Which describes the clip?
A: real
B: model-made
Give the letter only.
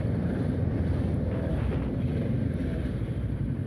A